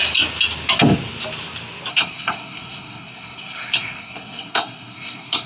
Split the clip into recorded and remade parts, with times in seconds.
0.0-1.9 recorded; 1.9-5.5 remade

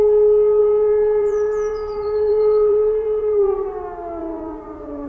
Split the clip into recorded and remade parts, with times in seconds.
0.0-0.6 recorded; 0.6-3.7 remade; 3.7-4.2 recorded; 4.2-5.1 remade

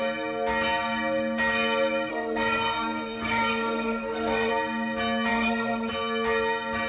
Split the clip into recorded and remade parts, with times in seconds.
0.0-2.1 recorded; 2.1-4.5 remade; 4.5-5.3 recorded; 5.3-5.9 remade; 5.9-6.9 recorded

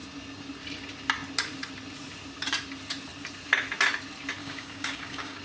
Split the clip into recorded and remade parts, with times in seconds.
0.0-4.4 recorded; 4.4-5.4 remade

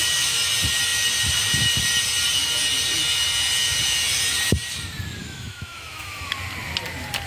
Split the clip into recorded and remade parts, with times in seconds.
0.0-5.2 recorded; 5.2-6.3 remade; 6.3-7.3 recorded